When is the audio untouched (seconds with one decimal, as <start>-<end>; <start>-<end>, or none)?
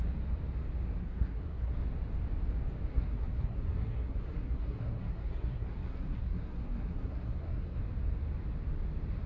0.0-1.0; 1.7-2.9; 7.8-9.3